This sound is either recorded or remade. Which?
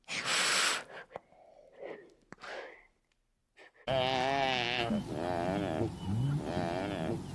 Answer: recorded